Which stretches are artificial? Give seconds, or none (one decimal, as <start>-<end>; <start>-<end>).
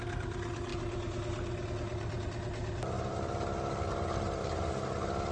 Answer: none